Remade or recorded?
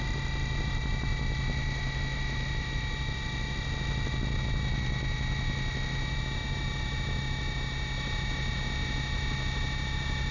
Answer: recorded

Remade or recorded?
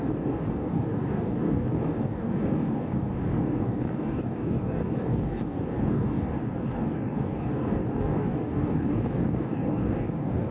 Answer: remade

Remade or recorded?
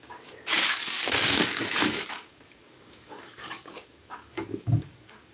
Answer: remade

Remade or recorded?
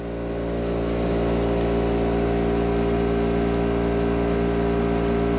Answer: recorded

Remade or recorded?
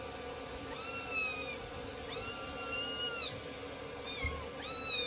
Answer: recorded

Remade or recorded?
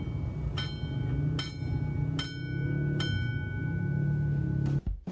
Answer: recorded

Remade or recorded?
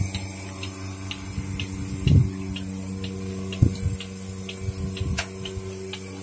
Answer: recorded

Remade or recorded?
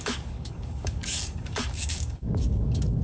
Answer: remade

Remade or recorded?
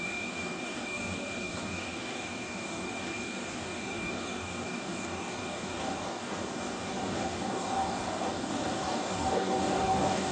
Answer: remade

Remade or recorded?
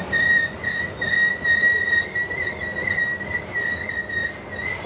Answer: recorded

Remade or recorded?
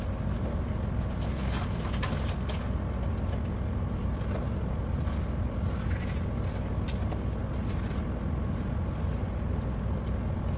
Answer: recorded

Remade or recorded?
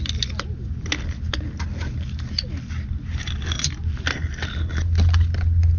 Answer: recorded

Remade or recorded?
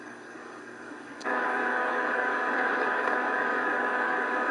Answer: remade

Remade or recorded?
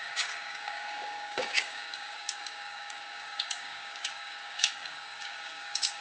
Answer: remade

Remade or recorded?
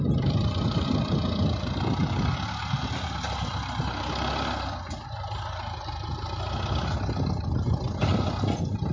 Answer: recorded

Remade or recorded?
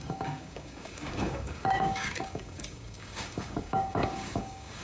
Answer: remade